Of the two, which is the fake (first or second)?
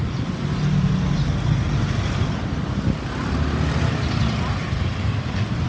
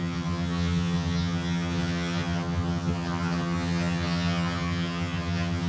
second